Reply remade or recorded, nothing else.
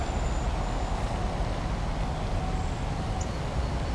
recorded